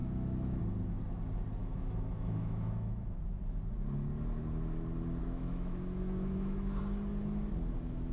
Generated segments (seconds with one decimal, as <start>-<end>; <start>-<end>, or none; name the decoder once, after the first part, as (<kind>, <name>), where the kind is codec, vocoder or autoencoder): 0.0-0.6 (autoencoder, DAC-VAE); 1.6-3.2; 5.2-6.8